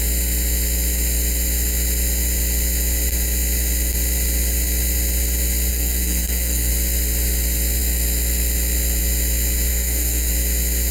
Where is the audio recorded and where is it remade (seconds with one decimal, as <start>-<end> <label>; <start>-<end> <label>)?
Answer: 0.0-5.7 recorded; 5.7-6.7 remade; 6.7-9.7 recorded; 9.7-10.3 remade; 10.3-10.9 recorded